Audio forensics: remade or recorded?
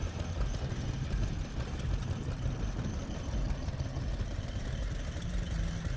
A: recorded